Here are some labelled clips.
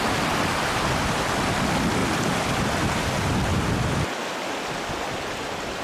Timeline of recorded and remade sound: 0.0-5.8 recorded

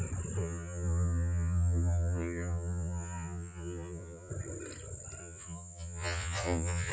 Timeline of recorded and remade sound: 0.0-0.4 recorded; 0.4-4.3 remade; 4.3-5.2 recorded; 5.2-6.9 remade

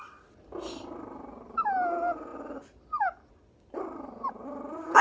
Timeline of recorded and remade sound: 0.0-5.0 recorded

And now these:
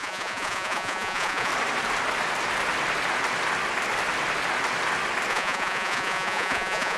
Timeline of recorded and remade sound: 0.0-1.5 remade; 1.5-5.3 recorded; 5.3-7.0 remade

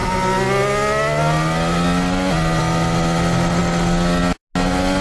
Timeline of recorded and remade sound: 0.0-5.0 recorded